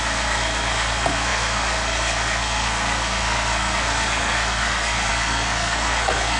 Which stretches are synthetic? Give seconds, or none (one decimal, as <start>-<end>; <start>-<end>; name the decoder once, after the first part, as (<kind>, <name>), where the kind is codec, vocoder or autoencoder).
0.0-6.4 (codec, SNAC)